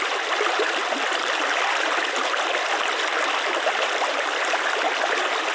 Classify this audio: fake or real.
fake